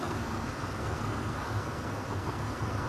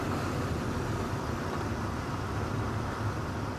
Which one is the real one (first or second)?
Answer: second